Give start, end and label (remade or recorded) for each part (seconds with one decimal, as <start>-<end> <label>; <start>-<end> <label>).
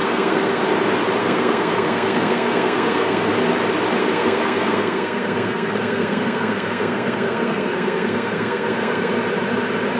0.0-0.6 remade; 0.6-1.2 recorded; 1.2-3.3 remade; 3.3-4.0 recorded; 4.0-9.1 remade; 9.1-10.0 recorded